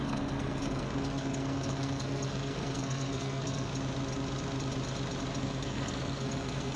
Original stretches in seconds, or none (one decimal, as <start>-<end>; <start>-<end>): 3.7-5.4